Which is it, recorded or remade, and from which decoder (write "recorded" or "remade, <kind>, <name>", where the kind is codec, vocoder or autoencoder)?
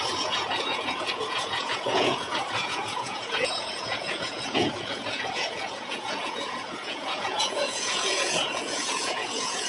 remade, vocoder, Vocos